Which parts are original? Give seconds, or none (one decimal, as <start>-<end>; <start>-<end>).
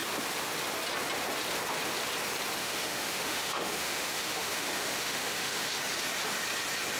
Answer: 0.0-2.6; 5.8-7.0